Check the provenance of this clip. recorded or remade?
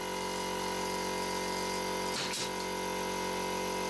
recorded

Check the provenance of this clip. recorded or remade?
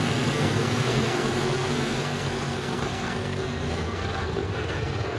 remade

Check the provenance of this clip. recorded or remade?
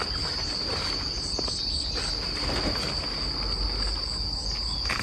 recorded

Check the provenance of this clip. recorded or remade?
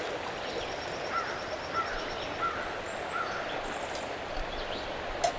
recorded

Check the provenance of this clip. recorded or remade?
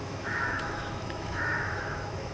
remade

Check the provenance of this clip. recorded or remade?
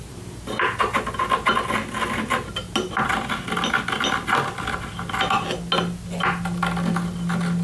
recorded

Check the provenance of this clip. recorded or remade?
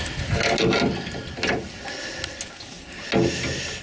recorded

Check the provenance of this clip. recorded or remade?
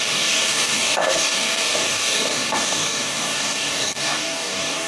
remade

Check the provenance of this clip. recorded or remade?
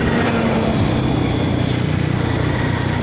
recorded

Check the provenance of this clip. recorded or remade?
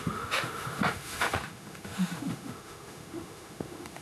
remade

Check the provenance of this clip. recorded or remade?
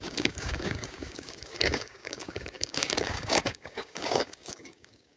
remade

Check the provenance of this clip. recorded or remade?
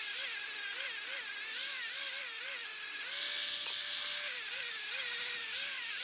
recorded